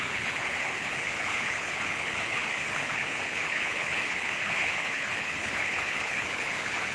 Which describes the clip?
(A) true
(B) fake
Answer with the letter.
B